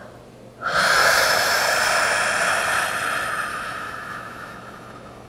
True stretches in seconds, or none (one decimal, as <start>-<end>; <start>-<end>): 0.0-1.0; 1.6-3.5